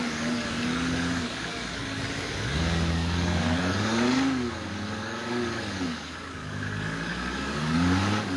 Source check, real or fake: fake